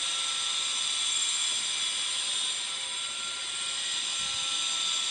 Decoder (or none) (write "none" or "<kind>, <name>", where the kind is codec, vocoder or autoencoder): none